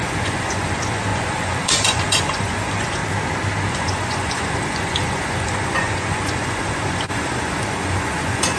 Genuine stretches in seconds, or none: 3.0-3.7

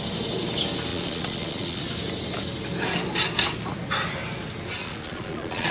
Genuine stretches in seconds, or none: 0.0-0.9; 1.8-4.8

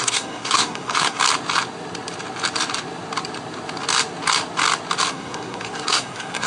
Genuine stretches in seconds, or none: 1.2-5.1

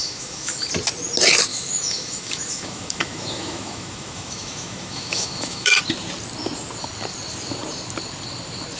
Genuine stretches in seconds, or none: 0.7-1.5; 5.8-8.8

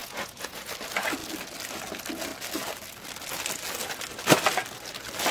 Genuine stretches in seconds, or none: 0.7-5.3

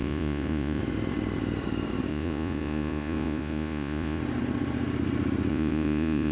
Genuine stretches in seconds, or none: 0.8-2.1; 4.2-5.5

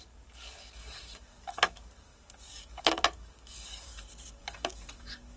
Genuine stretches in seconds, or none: none